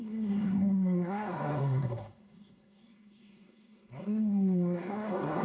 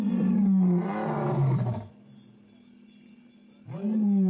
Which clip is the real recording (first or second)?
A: second